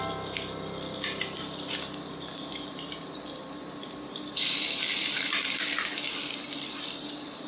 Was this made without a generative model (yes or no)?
no